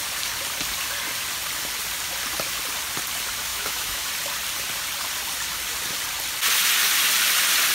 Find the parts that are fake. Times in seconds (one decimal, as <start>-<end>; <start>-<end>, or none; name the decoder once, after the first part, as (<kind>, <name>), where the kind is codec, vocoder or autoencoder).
3.5-4.1 (autoencoder, DAC-VAE)